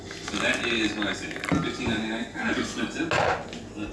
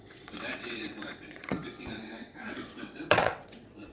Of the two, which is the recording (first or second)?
first